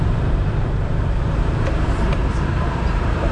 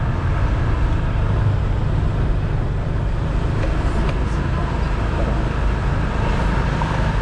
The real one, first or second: second